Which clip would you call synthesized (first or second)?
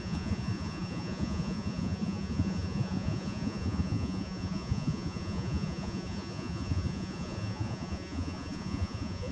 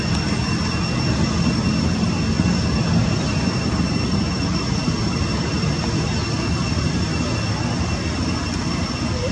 first